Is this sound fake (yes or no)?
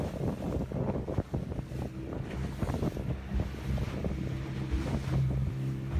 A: no